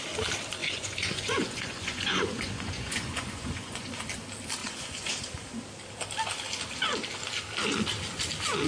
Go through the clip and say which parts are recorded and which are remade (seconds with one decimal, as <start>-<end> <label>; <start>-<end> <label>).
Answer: 0.0-0.6 recorded; 0.6-3.9 remade; 3.9-4.6 recorded; 4.6-5.1 remade; 5.1-8.7 recorded